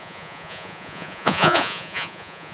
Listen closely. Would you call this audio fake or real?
fake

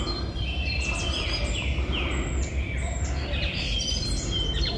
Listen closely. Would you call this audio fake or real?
real